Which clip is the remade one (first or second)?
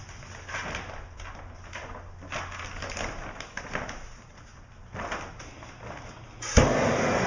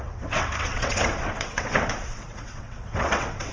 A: second